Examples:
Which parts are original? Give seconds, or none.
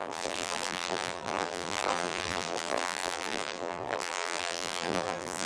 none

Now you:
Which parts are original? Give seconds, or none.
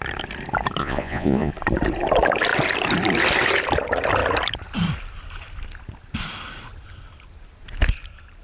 0.0-0.8; 1.5-8.4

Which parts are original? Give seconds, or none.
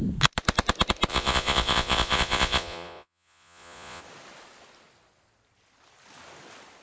0.0-1.1; 4.0-6.8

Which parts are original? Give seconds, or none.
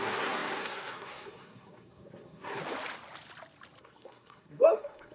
2.6-3.8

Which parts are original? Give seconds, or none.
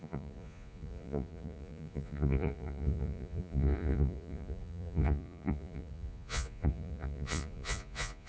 none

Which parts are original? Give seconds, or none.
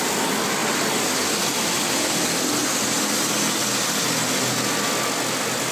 0.0-5.7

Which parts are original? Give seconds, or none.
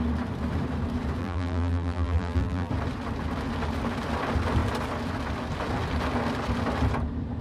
0.0-1.2; 2.7-7.4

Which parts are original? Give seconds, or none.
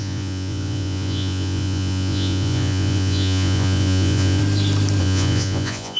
4.4-5.0